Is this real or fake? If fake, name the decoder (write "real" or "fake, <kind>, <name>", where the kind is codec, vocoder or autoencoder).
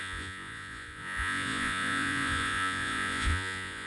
fake, vocoder, Vocos